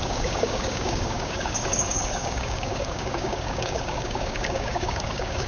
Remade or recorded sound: remade